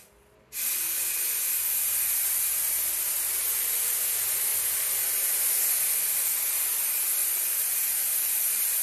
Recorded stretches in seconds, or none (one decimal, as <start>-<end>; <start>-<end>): 0.0-7.2